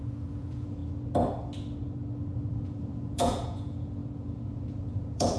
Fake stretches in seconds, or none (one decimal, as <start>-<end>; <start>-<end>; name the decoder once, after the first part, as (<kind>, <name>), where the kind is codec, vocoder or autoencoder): 0.0-0.8 (vocoder, Vocos); 2.5-5.4